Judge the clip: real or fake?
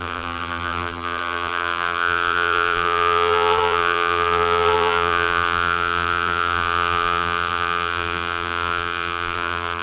fake